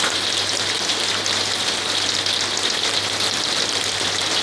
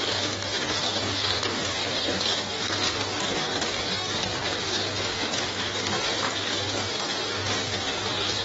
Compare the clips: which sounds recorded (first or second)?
first